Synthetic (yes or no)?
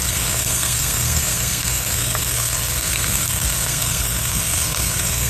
yes